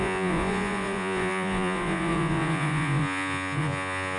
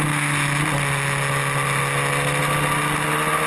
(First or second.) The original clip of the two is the second